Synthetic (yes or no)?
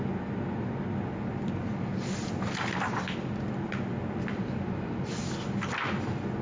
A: no